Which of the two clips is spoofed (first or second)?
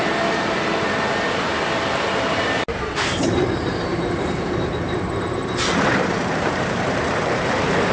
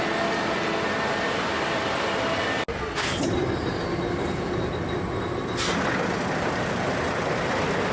first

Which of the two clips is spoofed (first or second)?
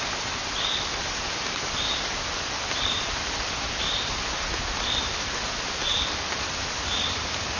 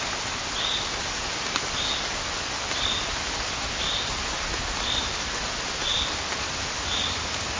first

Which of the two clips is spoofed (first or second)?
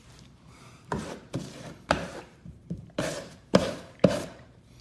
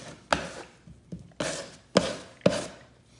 first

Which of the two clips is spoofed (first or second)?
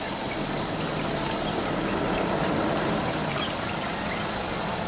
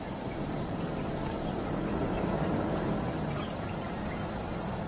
second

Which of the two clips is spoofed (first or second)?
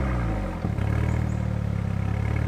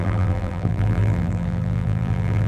second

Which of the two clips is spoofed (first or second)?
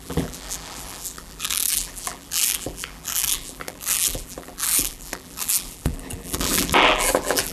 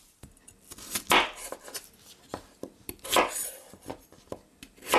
first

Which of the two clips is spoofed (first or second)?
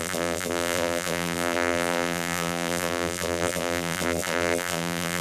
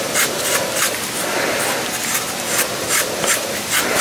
first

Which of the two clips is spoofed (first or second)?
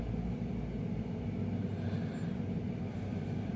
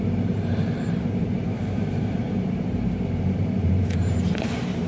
second